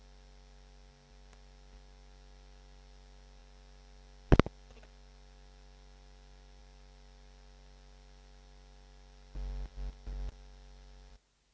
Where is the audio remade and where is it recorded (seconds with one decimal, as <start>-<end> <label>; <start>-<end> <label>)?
0.0-11.5 recorded